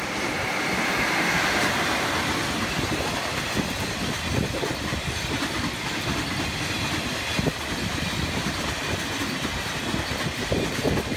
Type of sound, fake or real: real